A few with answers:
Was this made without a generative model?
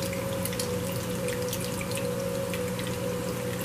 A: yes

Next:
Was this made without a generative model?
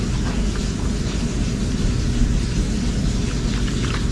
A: yes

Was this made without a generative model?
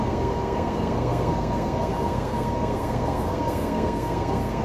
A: no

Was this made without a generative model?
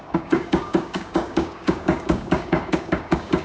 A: no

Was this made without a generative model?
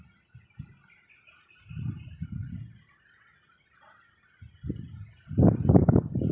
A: yes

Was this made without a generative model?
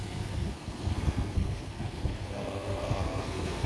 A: no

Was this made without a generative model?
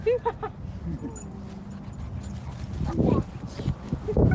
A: yes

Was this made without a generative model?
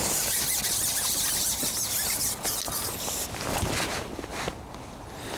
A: yes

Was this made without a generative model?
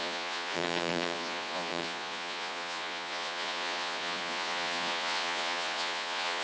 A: no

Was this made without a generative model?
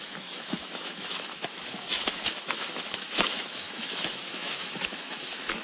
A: no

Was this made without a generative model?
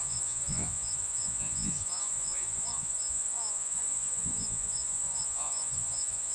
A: no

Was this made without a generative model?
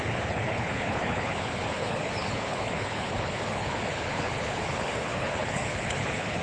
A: no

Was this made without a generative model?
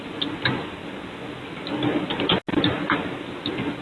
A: yes